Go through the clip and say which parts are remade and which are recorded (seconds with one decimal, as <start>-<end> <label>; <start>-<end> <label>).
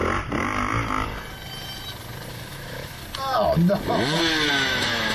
0.0-2.3 recorded; 2.3-3.0 remade; 3.0-4.5 recorded; 4.5-5.1 remade